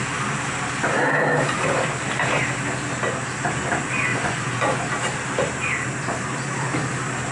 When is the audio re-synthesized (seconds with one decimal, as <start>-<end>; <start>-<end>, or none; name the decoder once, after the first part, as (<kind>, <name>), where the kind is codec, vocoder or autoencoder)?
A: 4.1-4.8 (vocoder, Vocos)